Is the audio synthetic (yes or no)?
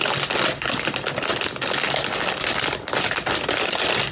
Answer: no